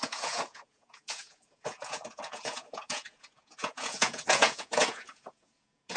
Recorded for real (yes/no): no